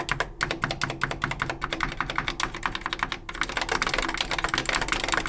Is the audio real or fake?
real